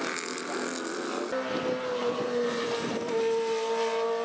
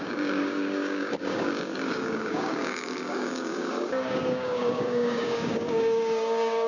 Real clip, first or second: first